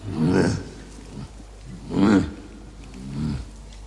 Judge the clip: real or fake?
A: real